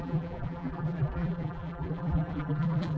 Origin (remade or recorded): remade